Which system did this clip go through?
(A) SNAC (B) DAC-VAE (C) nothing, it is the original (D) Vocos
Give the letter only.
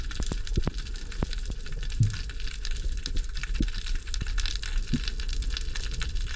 C